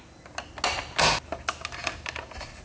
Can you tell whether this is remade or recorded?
recorded